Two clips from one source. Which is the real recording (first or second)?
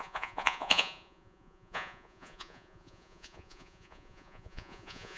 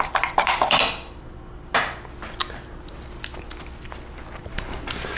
second